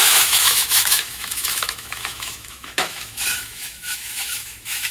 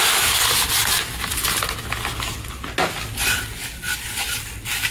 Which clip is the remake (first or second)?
first